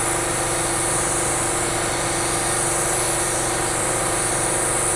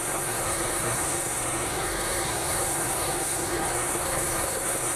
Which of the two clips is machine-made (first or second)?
second